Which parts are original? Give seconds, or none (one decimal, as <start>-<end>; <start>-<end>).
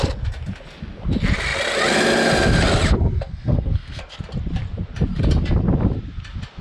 0.0-3.3; 4.0-6.6